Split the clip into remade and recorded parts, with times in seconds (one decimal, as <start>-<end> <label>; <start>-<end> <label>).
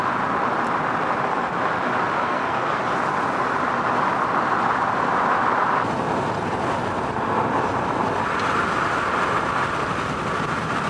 0.0-2.2 recorded; 2.2-2.8 remade; 2.8-10.9 recorded